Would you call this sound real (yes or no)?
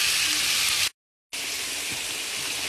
yes